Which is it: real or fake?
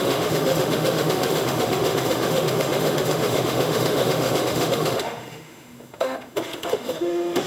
fake